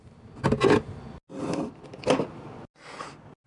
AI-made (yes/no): no